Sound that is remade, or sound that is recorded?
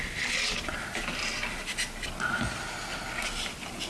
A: recorded